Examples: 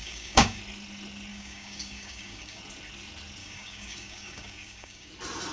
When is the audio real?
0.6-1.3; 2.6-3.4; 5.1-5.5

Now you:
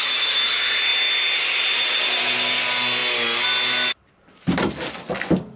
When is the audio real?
0.0-5.6

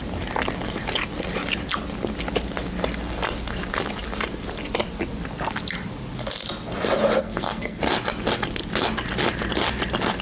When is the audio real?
0.0-7.2; 7.8-10.2

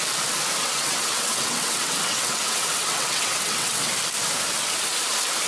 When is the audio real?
0.0-0.6; 3.9-5.5

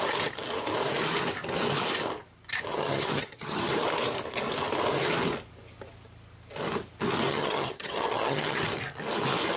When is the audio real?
0.0-2.7; 3.7-7.3; 8.6-9.6

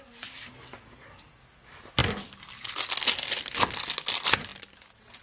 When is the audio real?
0.0-5.2